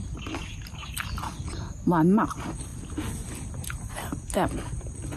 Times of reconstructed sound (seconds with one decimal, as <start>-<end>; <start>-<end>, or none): none